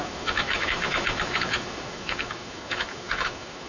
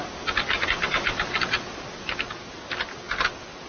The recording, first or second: second